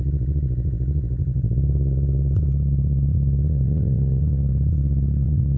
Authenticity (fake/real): fake